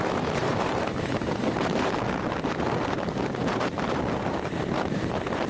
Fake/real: fake